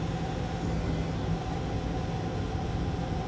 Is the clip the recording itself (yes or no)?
yes